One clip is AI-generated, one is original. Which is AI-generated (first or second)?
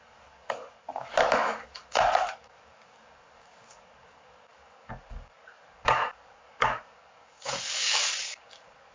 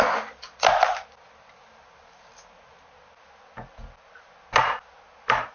first